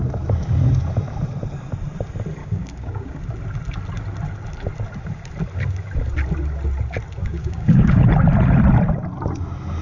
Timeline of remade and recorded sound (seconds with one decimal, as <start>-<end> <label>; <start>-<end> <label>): 0.0-2.4 recorded; 2.4-3.2 remade; 3.2-7.2 recorded; 7.2-8.0 remade; 8.0-9.8 recorded